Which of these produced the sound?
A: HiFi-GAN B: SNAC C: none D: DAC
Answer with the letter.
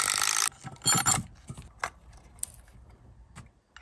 C